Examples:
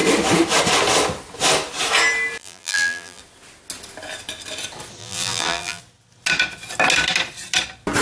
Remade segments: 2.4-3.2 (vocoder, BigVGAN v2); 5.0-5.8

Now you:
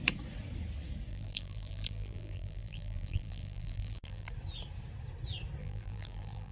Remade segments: 1.1-4.3 (vocoder, BigVGAN v2); 5.6-6.5

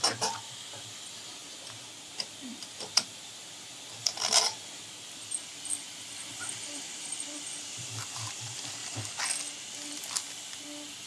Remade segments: 0.0-1.4 (vocoder, BigVGAN v2); 2.1-8.8; 9.9-11.1

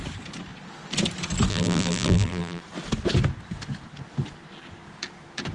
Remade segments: 1.5-2.6 (vocoder, BigVGAN v2)

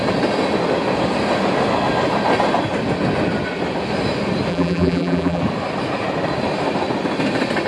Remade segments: 4.5-5.4 (vocoder, BigVGAN v2)